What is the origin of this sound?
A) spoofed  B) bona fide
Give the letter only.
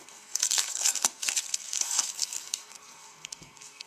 A